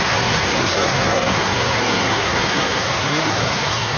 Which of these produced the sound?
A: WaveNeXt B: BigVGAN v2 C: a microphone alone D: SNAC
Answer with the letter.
D